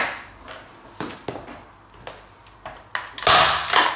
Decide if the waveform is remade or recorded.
recorded